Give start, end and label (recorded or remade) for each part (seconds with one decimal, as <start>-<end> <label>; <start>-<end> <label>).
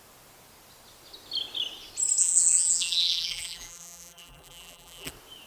0.0-2.2 recorded; 2.2-5.1 remade; 5.1-5.5 recorded